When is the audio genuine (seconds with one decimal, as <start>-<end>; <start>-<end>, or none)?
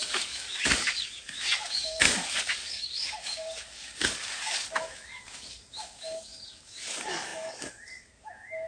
none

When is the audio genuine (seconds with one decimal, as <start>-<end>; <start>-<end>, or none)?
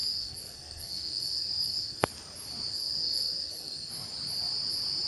2.1-2.7; 3.9-5.1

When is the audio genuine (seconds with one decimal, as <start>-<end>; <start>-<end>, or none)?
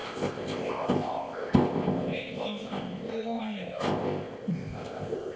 none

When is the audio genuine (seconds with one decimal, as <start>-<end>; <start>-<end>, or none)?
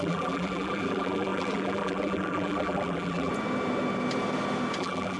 3.3-4.8